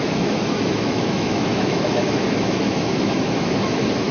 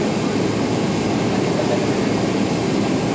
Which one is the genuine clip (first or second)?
second